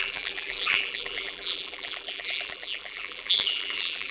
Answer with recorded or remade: remade